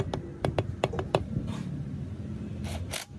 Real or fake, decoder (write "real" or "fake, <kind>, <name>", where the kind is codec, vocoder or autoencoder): real